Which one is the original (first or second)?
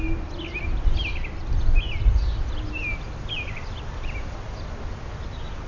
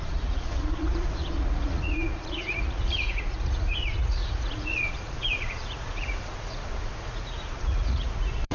first